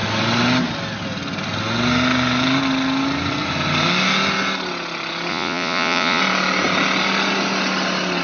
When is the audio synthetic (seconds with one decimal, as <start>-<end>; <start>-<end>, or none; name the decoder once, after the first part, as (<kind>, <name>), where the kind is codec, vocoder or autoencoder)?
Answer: 5.3-6.2 (vocoder, Vocos)